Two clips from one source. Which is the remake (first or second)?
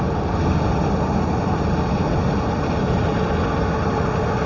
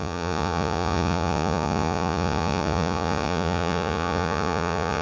second